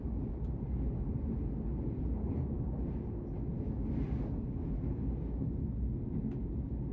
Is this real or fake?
real